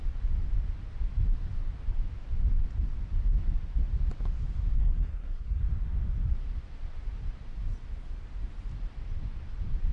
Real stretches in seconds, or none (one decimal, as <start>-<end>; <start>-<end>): 0.0-4.8; 5.6-9.9